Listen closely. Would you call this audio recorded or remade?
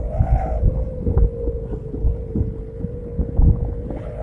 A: recorded